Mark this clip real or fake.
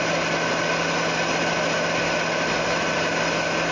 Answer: real